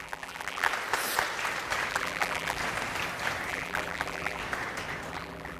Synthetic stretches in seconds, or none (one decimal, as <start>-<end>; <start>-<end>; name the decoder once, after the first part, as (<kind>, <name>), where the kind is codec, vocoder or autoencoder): 0.0-0.7 (vocoder, BigVGAN v2); 1.9-2.6; 3.5-4.4; 5.1-5.6